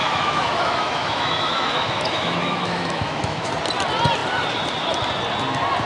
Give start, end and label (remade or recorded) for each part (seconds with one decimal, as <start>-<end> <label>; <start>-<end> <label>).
0.0-3.5 remade; 3.5-5.9 recorded